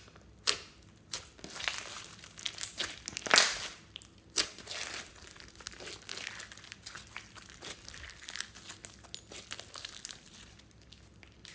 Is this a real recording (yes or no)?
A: yes